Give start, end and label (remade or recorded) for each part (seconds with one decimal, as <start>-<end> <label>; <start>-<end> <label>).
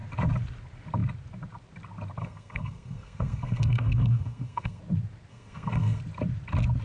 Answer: 0.0-2.2 recorded; 2.2-4.8 remade; 4.8-5.3 recorded; 5.3-6.0 remade; 6.0-6.8 recorded